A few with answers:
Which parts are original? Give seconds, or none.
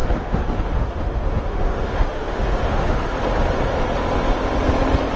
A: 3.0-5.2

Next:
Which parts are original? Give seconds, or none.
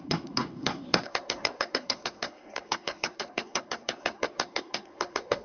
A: none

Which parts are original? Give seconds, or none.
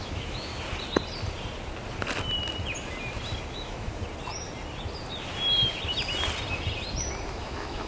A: 0.5-3.5; 4.0-7.3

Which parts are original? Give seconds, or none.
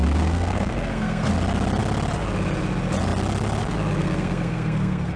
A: 1.3-4.0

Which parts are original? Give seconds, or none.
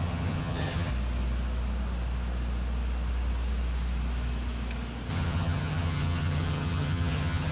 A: 0.9-5.1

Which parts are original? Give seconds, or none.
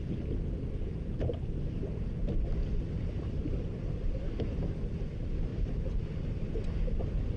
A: 0.0-2.6; 4.6-5.5; 6.1-7.4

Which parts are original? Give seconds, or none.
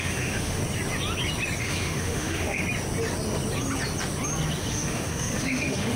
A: 0.6-1.6; 2.6-4.6